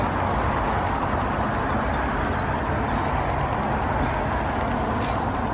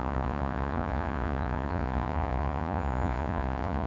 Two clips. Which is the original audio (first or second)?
first